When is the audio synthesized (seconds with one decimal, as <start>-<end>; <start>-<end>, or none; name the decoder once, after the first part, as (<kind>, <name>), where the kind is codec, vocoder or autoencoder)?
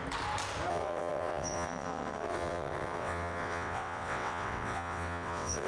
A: 0.7-5.7 (vocoder, WaveNeXt)